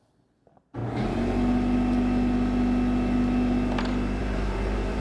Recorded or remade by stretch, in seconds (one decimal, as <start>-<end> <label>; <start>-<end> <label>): 0.0-4.2 recorded; 4.2-5.0 remade